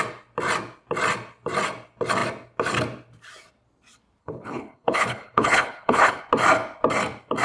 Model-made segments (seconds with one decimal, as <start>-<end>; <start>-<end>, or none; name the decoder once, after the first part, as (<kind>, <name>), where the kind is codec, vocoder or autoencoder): 4.2-6.2 (codec, HILCodec)